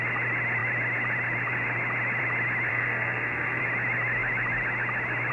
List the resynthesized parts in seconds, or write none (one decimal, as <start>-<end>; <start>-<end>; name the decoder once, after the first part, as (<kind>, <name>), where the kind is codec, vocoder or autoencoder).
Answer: 2.7-3.6 (codec, SNAC)